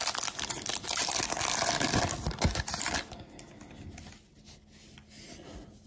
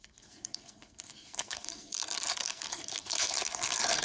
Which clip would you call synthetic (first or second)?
second